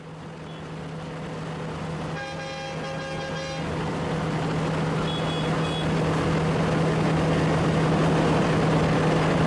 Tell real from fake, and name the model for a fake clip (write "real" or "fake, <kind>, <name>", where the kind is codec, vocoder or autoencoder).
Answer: real